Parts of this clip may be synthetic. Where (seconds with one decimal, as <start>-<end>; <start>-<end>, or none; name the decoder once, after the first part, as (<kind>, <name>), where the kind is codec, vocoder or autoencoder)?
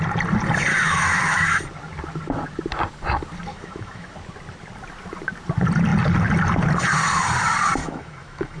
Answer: 0.7-1.6 (autoencoder, DAC-VAE); 3.5-4.1; 7.8-8.6